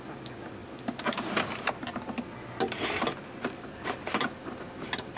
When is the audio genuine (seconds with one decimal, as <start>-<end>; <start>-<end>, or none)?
0.0-5.2

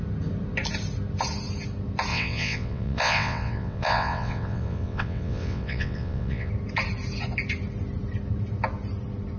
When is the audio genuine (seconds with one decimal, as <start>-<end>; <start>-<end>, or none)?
0.0-2.1; 6.5-9.4

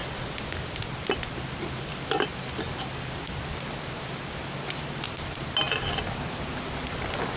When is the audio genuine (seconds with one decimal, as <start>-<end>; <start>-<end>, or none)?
0.0-7.4